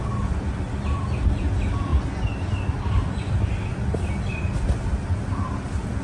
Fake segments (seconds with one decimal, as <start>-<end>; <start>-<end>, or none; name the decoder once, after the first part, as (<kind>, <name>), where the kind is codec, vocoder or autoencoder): none